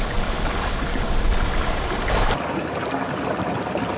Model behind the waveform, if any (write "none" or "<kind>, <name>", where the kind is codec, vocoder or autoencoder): none